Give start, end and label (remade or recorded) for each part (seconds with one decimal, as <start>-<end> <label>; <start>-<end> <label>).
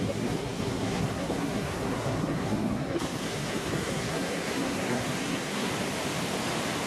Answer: 0.0-5.7 remade; 5.7-6.9 recorded